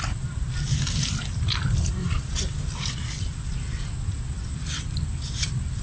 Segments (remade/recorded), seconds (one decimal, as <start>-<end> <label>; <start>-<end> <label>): 0.0-2.0 recorded; 2.0-2.9 remade; 2.9-5.8 recorded